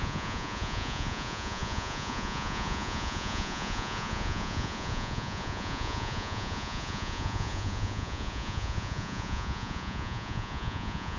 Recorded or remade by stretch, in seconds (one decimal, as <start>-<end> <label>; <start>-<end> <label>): 0.0-11.2 remade